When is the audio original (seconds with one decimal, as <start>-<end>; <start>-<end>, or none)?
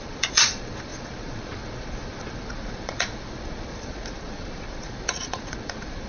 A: none